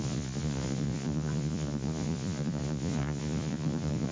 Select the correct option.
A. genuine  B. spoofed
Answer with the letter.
B